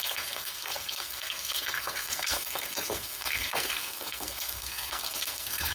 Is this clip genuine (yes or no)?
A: no